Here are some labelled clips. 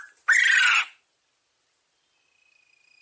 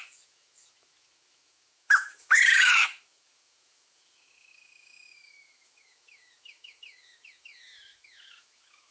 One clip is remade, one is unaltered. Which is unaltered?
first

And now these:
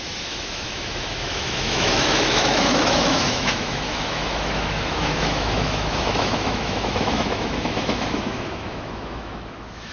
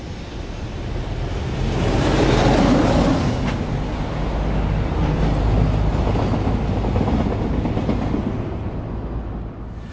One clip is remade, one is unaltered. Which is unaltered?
second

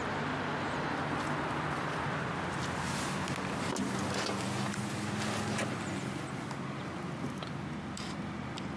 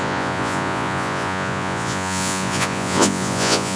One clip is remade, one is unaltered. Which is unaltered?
first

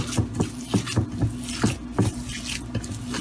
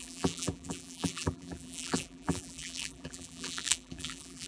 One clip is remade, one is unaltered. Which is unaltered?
first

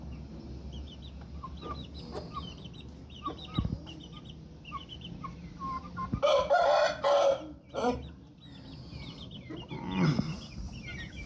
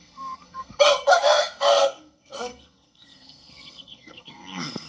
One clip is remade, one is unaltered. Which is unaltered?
first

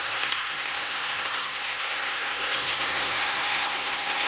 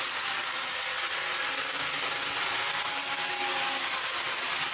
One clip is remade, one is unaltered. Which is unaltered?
second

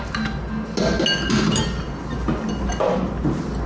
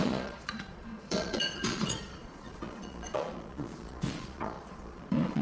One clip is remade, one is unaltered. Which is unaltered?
first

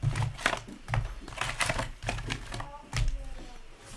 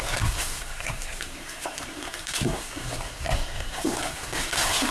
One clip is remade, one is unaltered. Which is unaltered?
first